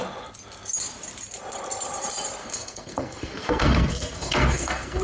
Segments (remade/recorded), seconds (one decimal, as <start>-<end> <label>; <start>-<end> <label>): 0.0-2.4 recorded; 2.4-5.0 remade